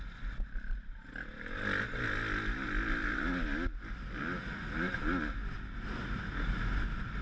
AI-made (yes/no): no